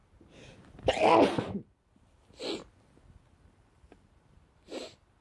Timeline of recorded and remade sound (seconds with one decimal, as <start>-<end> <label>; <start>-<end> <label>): 0.0-5.2 recorded